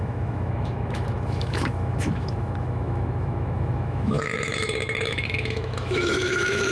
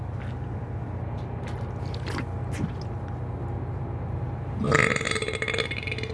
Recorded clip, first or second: second